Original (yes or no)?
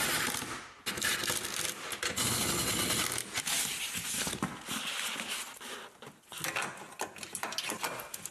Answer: yes